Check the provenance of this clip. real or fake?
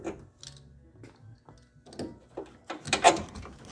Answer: real